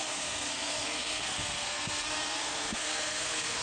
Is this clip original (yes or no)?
no